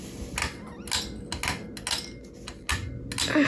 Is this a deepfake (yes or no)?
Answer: no